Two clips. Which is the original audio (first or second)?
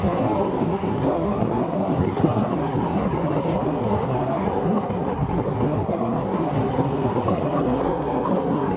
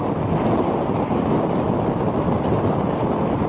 second